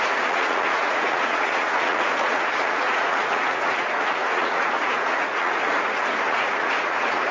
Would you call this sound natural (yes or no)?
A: no